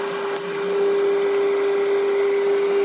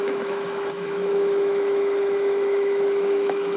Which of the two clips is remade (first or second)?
second